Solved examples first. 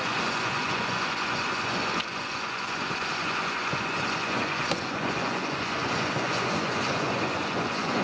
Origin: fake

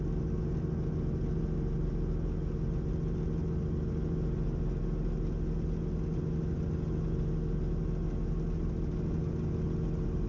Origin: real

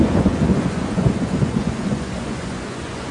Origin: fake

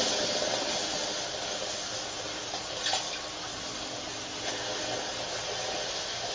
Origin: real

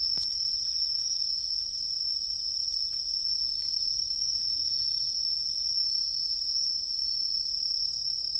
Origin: real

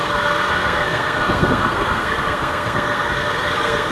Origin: fake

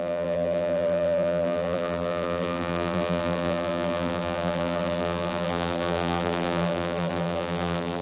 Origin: fake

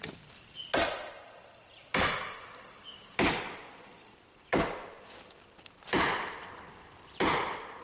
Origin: real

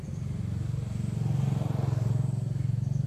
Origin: real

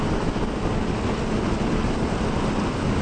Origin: real